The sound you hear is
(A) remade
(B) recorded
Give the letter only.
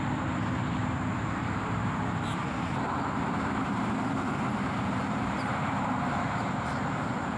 A